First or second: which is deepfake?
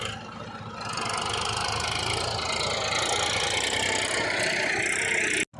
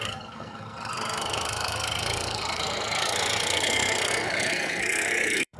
second